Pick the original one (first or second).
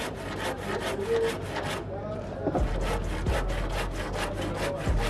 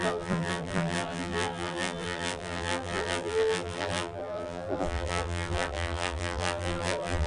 first